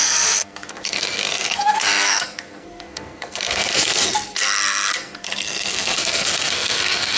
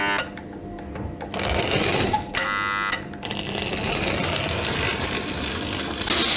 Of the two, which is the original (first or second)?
second